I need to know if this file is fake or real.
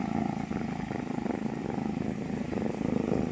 real